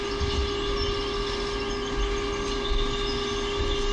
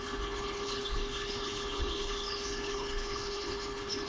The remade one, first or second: second